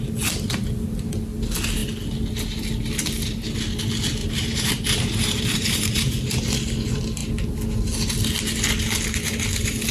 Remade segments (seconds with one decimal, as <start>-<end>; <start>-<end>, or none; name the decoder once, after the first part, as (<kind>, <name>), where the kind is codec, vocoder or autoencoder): 4.2-6.2 (vocoder, BigVGAN v2)